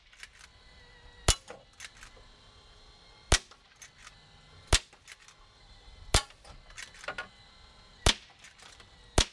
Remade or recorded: recorded